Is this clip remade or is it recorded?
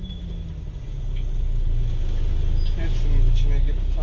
recorded